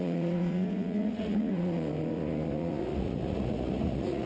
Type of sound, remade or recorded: remade